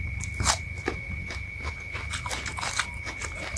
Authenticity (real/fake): real